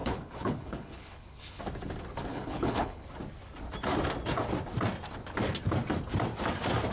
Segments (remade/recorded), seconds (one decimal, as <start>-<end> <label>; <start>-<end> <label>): 0.0-1.6 remade; 1.6-2.3 recorded; 2.3-3.0 remade; 3.0-6.9 recorded